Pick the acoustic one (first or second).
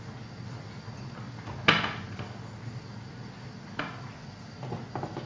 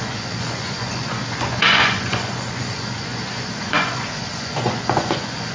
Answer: first